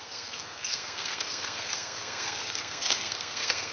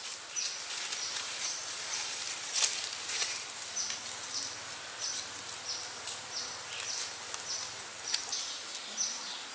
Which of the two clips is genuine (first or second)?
second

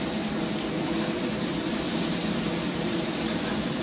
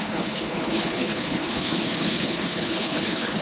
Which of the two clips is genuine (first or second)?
first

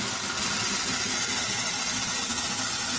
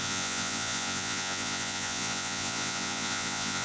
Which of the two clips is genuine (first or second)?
first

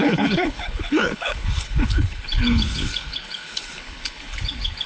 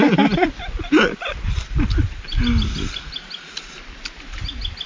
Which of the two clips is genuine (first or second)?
second